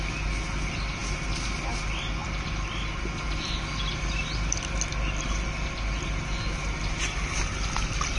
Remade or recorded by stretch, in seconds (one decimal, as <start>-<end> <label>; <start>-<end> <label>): 0.0-8.2 recorded